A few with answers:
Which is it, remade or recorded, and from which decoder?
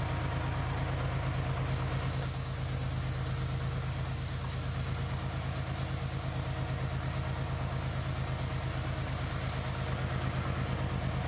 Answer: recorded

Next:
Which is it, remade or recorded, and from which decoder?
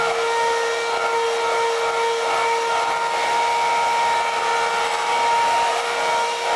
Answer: recorded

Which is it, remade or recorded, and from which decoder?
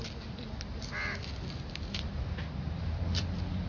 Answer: recorded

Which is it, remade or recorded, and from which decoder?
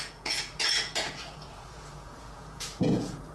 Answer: remade, vocoder, Vocos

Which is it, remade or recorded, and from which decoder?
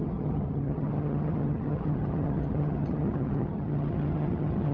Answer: remade, vocoder, HiFi-GAN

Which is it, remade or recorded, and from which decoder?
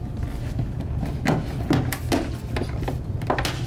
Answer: recorded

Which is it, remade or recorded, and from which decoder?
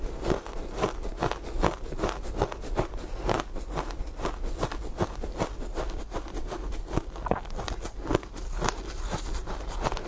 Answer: recorded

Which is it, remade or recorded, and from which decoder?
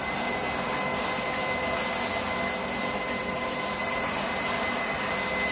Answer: recorded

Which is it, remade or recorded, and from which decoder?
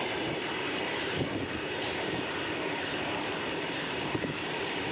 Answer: remade, vocoder, BigVGAN v2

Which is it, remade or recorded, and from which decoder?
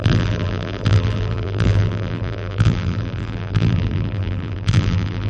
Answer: remade, vocoder, BigVGAN v2